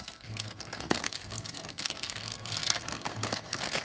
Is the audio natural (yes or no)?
no